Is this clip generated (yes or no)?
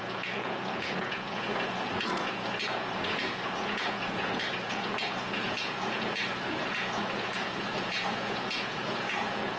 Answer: yes